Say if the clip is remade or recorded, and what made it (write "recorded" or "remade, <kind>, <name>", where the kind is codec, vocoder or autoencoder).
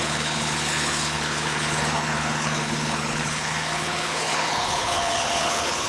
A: remade, codec, HILCodec